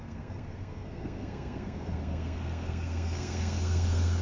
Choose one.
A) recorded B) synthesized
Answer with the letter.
B